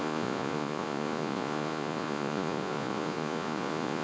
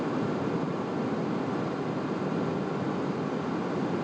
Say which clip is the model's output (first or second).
first